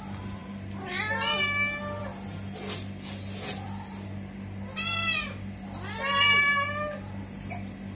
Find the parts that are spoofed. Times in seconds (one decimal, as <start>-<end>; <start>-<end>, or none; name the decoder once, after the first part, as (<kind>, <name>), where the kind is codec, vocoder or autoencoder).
none